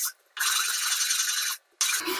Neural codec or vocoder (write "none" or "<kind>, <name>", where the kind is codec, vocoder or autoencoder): none